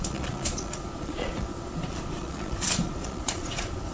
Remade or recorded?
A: remade